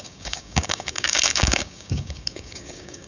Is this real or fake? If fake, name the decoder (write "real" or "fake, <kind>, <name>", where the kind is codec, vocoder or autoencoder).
fake, codec, DAC